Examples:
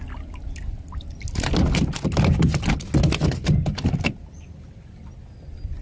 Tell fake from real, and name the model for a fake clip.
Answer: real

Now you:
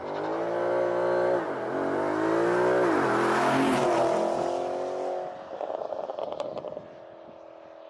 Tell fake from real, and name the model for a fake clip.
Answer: real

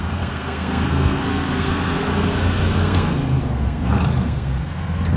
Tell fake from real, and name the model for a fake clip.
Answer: fake, codec, SNAC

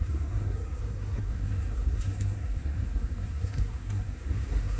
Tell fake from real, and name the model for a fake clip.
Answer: fake, codec, SNAC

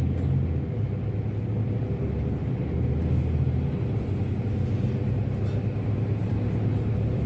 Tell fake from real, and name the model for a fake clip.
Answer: real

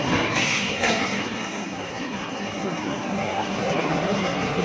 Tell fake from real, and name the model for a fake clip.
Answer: fake, codec, SNAC